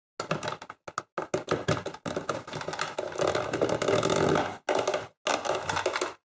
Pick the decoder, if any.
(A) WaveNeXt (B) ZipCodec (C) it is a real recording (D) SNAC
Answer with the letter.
C